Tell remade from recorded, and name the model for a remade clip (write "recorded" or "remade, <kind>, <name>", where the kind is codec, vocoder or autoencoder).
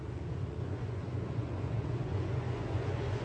remade, vocoder, Vocos